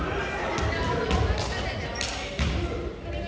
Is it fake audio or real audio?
real